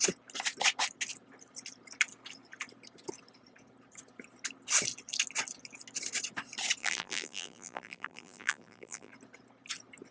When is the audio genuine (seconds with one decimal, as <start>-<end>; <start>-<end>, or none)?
0.0-6.8; 9.1-10.1